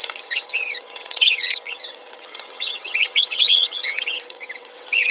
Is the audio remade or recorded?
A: remade